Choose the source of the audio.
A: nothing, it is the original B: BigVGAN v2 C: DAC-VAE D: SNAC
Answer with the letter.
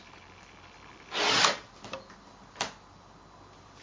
A